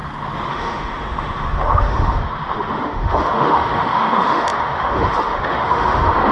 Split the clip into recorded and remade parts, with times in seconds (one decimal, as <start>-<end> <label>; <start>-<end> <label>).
0.0-0.5 recorded; 0.5-6.3 remade